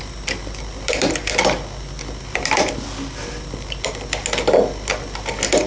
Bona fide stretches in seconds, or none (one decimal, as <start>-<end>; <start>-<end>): 0.0-0.4; 3.8-5.7